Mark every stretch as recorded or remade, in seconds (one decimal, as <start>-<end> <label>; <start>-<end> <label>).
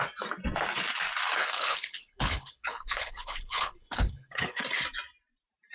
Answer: 0.0-1.4 recorded; 1.4-4.6 remade; 4.6-5.7 recorded